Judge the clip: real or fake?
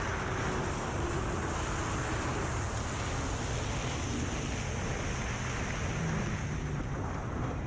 real